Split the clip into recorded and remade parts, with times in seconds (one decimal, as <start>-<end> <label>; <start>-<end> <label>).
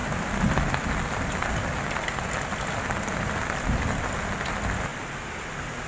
0.0-5.9 recorded